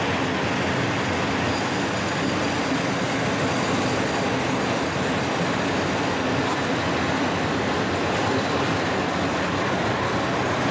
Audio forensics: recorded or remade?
recorded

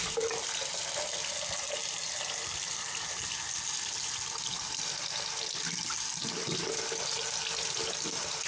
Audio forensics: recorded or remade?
recorded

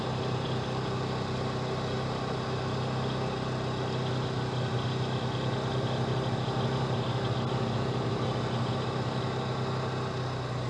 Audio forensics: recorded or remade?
recorded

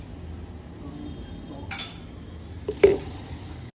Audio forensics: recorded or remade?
recorded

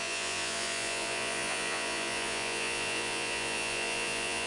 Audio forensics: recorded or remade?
remade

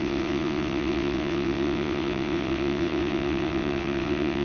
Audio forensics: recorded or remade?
remade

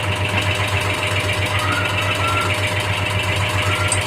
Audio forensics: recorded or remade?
recorded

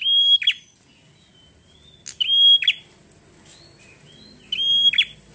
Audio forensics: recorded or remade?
recorded